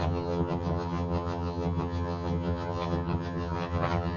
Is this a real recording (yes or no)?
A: no